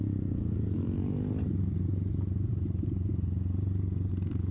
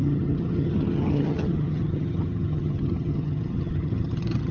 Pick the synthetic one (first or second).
second